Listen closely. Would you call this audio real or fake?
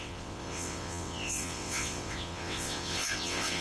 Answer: fake